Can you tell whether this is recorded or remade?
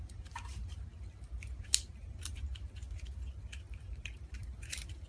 remade